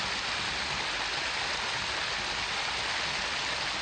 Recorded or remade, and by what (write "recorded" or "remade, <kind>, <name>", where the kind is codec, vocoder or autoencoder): recorded